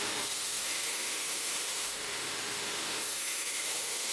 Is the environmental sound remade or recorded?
remade